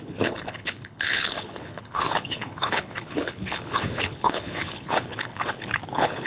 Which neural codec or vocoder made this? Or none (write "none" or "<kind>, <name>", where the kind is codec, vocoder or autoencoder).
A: codec, HILCodec